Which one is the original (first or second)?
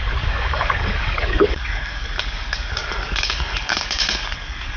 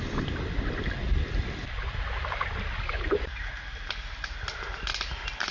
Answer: second